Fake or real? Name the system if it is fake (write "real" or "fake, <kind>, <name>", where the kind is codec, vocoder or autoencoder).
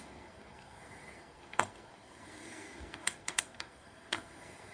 fake, codec, SNAC